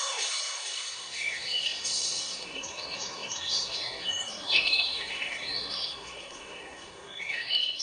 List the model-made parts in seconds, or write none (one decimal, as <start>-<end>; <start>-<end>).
0.0-7.8